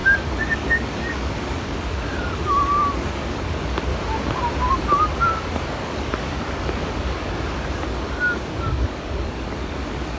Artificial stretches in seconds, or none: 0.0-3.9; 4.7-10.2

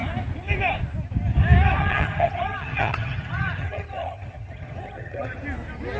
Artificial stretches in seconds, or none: 1.8-5.4